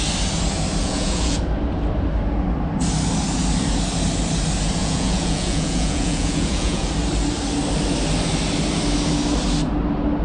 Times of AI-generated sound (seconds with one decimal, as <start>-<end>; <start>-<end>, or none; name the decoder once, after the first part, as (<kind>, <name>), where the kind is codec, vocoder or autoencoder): 0.8-1.4 (vocoder, Vocos); 4.8-6.9